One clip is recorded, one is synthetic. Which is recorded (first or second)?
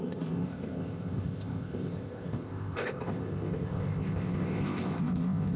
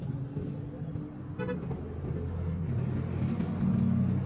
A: second